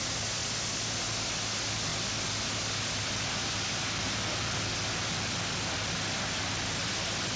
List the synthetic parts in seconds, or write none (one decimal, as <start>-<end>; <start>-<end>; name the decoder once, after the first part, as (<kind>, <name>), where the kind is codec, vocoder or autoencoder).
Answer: none